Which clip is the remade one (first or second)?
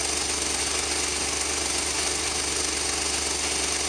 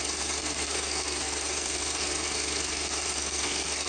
second